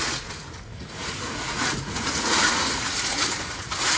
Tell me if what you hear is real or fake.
fake